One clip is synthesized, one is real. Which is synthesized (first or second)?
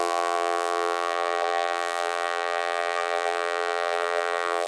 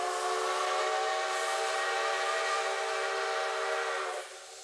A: first